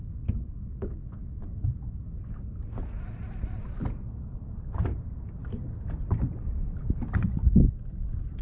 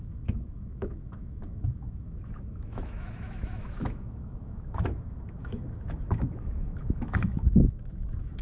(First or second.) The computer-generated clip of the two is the second